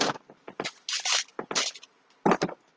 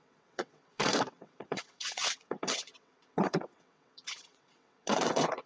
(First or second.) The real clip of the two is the first